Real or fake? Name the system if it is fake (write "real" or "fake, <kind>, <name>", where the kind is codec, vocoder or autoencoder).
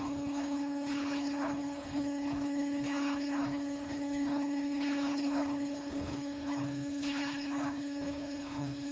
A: fake, codec, HILCodec